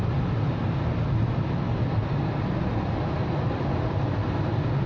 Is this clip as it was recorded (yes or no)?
yes